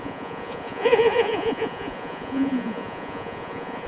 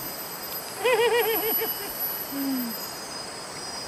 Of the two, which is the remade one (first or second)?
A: first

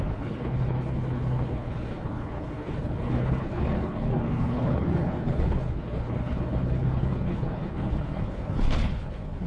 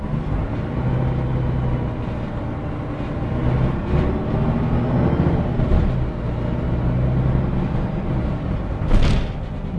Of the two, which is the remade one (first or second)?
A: first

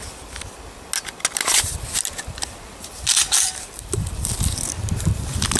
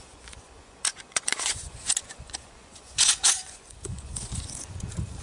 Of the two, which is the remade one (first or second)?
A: second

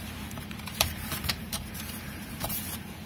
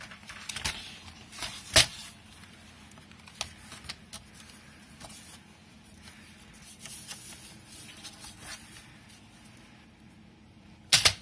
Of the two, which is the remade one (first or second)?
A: first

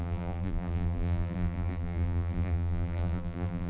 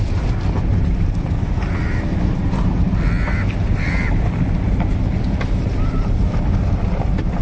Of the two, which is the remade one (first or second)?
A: first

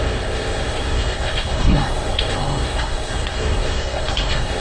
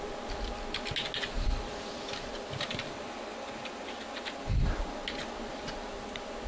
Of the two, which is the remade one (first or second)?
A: first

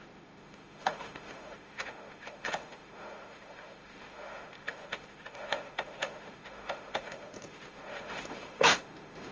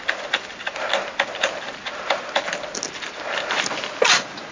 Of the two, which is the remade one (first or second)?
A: first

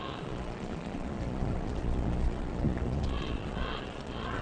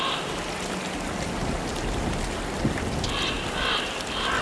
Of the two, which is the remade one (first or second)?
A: first